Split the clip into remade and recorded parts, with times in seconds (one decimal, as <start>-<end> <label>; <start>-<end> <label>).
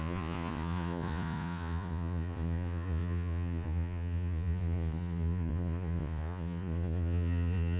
0.0-7.8 remade